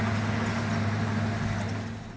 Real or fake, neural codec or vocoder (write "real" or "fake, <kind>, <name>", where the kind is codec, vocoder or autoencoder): real